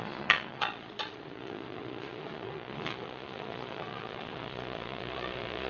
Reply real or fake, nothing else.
fake